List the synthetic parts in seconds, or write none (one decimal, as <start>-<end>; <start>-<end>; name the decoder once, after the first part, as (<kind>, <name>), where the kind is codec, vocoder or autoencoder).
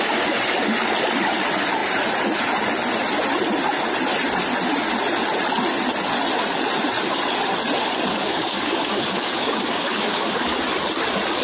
8.1-10.6 (codec, DAC)